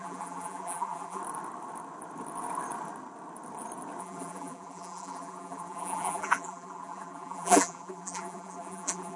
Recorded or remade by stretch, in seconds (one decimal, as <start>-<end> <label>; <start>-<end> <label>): 0.0-1.2 remade; 1.2-4.0 recorded; 4.0-9.2 remade